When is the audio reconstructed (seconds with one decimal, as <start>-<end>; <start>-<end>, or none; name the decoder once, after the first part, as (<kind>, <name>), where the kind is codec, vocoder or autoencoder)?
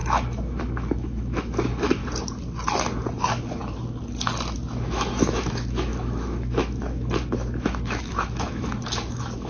0.0-2.0 (autoencoder, DAC-VAE); 4.7-9.5